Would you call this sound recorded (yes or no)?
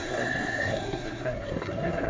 no